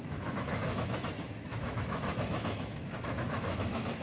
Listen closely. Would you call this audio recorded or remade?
remade